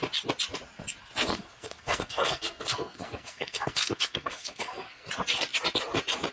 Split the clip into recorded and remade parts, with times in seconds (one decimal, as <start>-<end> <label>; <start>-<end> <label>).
0.0-1.3 recorded; 1.3-5.1 remade; 5.1-6.3 recorded